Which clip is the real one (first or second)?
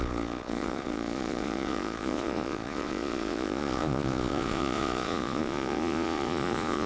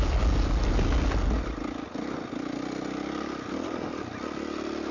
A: second